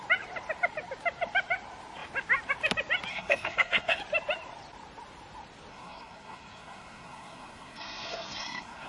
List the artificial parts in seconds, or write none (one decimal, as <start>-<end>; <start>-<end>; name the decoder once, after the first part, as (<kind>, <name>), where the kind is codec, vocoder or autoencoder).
3.1-4.0 (codec, SNAC); 5.7-8.9